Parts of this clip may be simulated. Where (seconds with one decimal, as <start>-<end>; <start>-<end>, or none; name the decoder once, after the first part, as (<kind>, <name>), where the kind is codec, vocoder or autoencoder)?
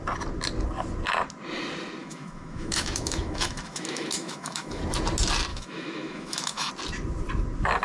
2.0-4.8 (autoencoder, DAC-VAE); 5.5-6.7